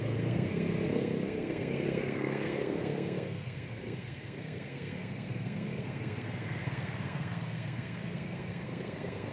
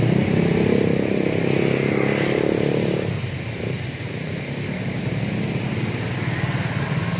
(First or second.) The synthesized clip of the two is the first